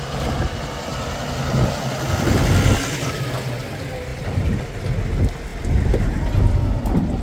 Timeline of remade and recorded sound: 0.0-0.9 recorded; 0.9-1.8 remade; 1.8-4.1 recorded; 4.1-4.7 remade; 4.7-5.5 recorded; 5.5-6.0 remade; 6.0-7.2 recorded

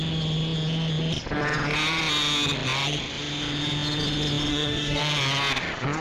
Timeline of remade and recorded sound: 0.0-4.5 recorded; 4.5-5.0 remade; 5.0-6.0 recorded

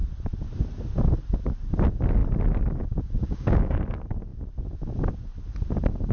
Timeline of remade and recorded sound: 0.0-3.2 recorded; 3.2-3.8 remade; 3.8-6.1 recorded

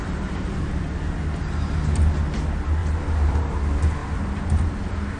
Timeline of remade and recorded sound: 0.0-0.8 remade; 0.8-2.8 recorded; 2.8-3.4 remade; 3.4-4.0 recorded; 4.0-4.7 remade; 4.7-5.2 recorded

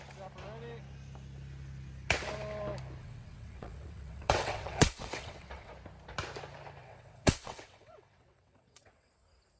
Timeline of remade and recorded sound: 0.0-3.0 recorded; 3.0-5.7 remade; 5.7-6.8 recorded; 6.8-9.1 remade; 9.1-9.6 recorded